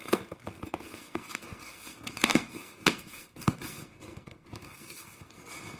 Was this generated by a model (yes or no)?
yes